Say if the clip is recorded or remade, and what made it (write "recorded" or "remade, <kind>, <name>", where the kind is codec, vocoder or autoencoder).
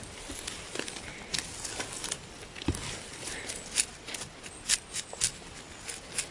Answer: recorded